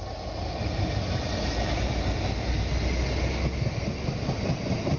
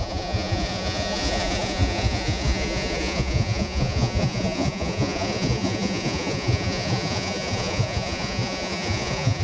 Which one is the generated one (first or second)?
second